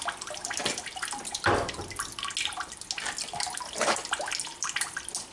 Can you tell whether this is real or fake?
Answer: real